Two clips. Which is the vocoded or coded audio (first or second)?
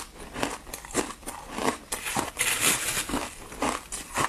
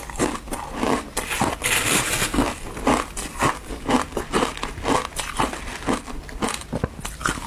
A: first